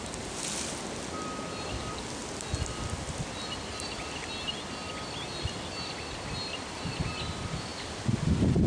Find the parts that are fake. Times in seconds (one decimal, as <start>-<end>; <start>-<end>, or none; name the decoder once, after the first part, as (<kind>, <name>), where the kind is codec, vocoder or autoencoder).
none